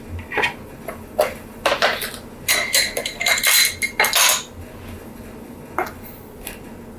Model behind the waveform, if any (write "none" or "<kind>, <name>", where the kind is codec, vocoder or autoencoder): none